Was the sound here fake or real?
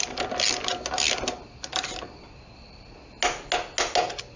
real